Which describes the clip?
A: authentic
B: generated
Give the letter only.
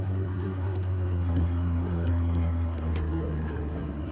B